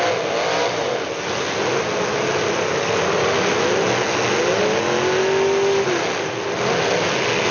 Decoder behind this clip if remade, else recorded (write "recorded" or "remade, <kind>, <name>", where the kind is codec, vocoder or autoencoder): recorded